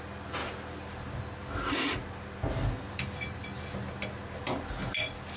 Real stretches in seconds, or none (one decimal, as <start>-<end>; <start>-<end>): 0.0-5.4